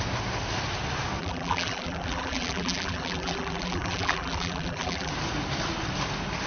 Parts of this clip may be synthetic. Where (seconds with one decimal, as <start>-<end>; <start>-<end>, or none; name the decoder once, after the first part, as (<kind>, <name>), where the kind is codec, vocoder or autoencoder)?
1.2-5.1 (vocoder, BigVGAN v2)